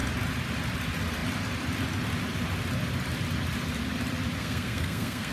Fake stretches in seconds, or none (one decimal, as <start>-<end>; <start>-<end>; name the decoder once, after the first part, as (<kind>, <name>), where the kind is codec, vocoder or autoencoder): 4.4-5.3 (codec, SNAC)